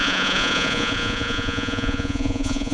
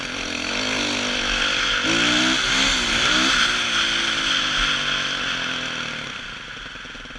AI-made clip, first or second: first